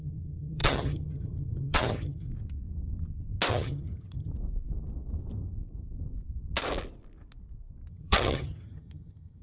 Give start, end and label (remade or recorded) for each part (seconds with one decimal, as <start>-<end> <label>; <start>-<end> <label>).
0.0-2.3 remade; 2.3-3.5 recorded; 3.5-4.3 remade; 4.3-7.9 recorded; 7.9-9.4 remade